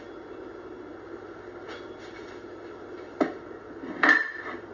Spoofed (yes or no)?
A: no